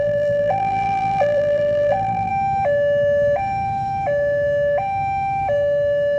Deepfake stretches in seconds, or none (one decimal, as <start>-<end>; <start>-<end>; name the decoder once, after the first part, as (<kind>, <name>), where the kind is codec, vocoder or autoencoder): 0.0-2.3 (vocoder, BigVGAN v2)